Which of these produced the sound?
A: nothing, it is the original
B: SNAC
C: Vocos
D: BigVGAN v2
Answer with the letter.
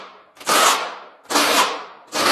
A